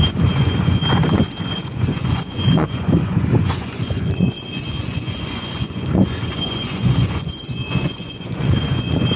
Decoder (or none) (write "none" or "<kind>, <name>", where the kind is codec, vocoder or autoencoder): vocoder, Vocos